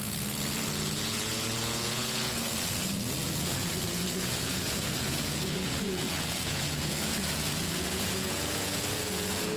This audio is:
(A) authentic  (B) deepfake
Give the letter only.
B